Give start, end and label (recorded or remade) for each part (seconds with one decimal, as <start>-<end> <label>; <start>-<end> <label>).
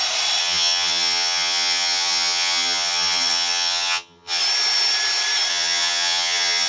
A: 0.0-0.4 recorded; 0.4-4.4 remade; 4.4-5.5 recorded; 5.5-6.7 remade